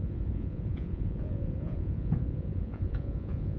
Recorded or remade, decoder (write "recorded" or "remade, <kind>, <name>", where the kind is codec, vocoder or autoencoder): remade, vocoder, Vocos